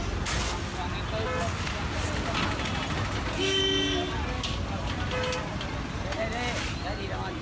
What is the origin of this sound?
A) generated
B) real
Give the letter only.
B